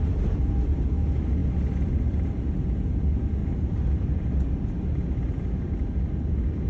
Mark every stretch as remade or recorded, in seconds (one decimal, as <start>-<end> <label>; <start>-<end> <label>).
0.0-3.4 recorded; 3.4-4.2 remade; 4.2-6.7 recorded